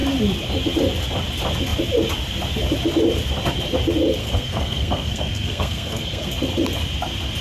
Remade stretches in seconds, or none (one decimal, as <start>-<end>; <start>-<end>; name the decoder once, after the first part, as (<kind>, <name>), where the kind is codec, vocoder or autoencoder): 4.2-6.3 (codec, SNAC)